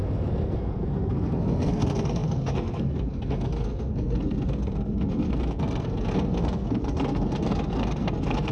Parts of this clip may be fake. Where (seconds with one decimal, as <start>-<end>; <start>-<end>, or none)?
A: 0.0-8.5